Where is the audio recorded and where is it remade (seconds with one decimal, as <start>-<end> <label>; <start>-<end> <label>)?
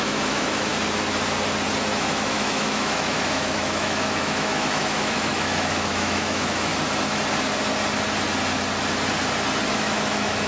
0.0-0.7 remade; 0.7-2.0 recorded; 2.0-6.7 remade; 6.7-9.7 recorded; 9.7-10.5 remade